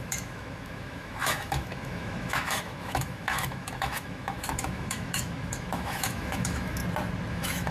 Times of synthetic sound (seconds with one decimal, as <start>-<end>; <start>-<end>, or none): 0.0-6.8; 7.3-7.7